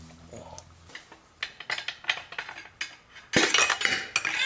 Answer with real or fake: real